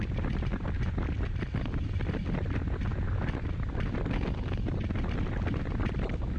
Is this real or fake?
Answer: real